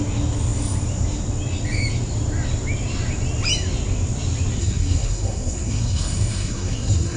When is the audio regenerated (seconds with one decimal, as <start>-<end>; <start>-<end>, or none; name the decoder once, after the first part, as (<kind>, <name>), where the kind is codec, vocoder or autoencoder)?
4.6-7.2 (codec, SNAC)